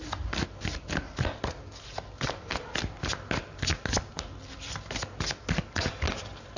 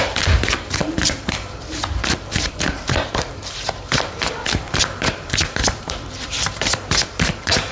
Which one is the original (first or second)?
first